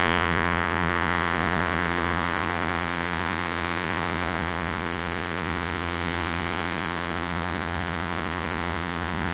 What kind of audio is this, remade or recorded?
remade